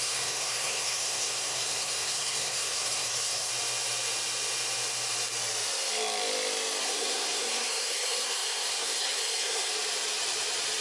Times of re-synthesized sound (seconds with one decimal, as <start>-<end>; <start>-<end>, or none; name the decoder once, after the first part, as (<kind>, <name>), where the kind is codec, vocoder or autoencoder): 0.0-3.5 (codec, SNAC); 6.8-9.7